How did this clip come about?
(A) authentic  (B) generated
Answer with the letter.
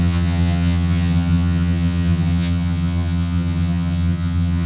B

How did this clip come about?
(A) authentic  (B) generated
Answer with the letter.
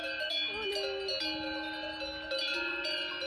A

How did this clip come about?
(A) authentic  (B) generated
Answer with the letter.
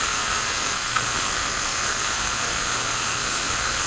B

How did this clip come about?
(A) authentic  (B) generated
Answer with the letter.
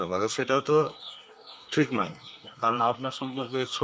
B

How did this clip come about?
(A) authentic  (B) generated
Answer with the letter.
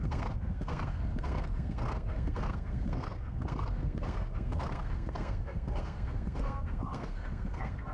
B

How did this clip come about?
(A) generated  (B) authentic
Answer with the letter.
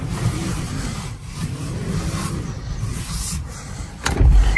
A